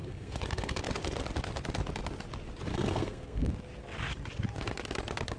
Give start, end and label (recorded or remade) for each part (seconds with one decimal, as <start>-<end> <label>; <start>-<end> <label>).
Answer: 0.0-0.8 remade; 0.8-2.7 recorded; 2.7-3.5 remade; 3.5-5.4 recorded